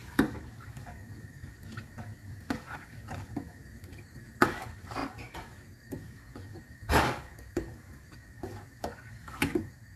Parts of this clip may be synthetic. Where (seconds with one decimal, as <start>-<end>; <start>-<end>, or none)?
0.0-10.0